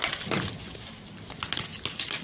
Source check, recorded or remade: recorded